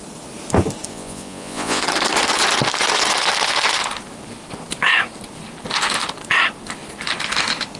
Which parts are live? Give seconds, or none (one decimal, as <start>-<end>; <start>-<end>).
0.0-0.9; 1.8-7.8